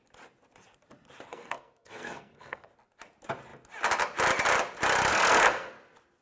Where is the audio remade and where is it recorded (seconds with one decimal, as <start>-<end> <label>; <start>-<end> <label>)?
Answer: 0.0-1.3 recorded; 1.3-2.7 remade; 2.7-5.1 recorded; 5.1-5.7 remade; 5.7-6.2 recorded